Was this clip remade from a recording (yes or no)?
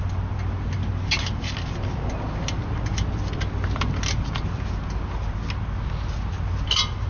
no